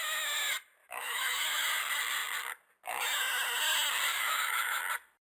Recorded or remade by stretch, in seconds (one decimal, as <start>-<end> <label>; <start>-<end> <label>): 0.0-0.8 recorded; 0.8-1.6 remade; 1.6-4.1 recorded; 4.1-4.8 remade; 4.8-5.3 recorded